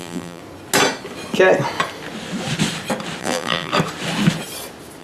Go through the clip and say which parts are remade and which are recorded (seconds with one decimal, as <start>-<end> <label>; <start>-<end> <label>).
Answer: 0.0-0.4 remade; 0.4-3.2 recorded; 3.2-3.7 remade; 3.7-5.0 recorded